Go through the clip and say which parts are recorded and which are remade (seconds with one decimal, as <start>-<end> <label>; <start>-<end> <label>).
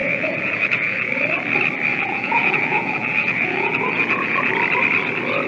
0.0-1.1 remade; 1.1-1.9 recorded; 1.9-4.5 remade; 4.5-5.5 recorded